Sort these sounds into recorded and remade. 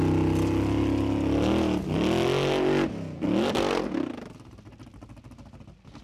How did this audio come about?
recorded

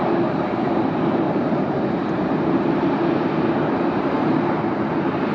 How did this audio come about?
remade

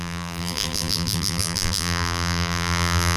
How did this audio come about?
remade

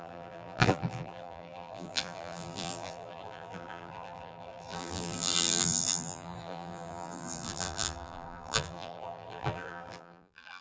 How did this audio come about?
remade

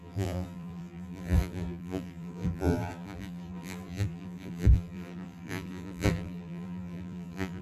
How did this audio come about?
remade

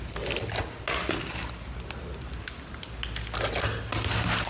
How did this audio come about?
recorded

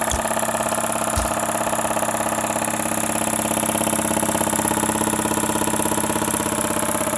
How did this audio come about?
recorded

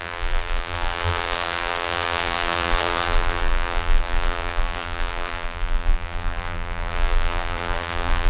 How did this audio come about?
remade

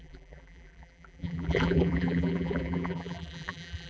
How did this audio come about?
remade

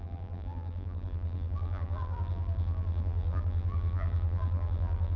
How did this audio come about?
remade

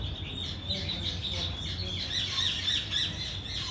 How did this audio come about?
recorded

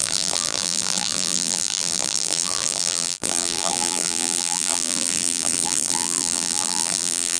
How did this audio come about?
remade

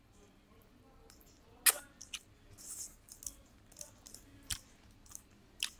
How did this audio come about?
recorded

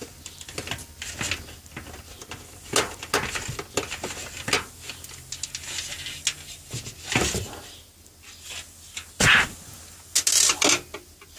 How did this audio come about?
recorded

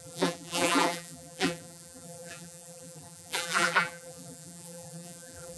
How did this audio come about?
remade